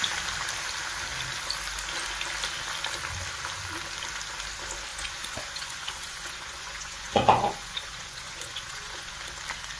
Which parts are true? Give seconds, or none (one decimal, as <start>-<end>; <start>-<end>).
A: 0.0-4.9; 9.1-9.8

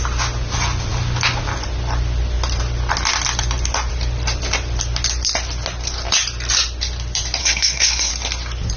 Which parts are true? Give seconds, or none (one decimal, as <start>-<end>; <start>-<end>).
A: 0.0-7.4; 8.1-8.8

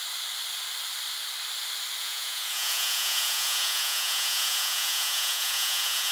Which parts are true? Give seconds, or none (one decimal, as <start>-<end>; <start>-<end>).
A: 0.0-2.0

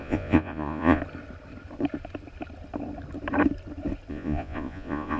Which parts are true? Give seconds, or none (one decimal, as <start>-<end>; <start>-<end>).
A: 1.0-4.1

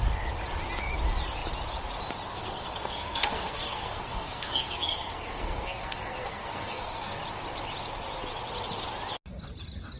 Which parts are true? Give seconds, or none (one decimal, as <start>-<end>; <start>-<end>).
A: 0.0-2.3; 7.2-10.0

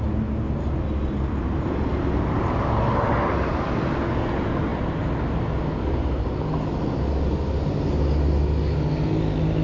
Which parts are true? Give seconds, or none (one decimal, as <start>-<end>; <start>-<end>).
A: 0.0-9.6